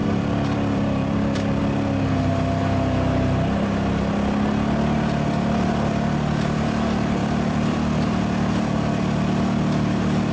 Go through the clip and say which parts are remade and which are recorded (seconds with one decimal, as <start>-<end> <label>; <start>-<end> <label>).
0.0-1.6 remade; 1.6-7.2 recorded; 7.2-8.1 remade; 8.1-10.3 recorded